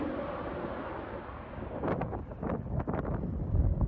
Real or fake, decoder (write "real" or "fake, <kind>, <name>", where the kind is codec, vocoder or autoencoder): real